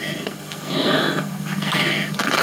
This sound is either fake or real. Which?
fake